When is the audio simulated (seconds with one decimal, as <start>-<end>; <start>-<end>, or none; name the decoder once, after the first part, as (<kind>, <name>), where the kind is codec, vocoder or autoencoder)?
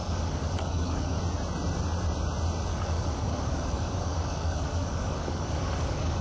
0.0-1.2 (codec, DAC); 2.7-6.2